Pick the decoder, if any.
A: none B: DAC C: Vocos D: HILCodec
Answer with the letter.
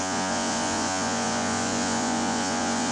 C